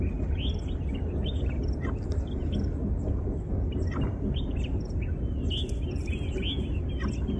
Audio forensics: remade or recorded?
recorded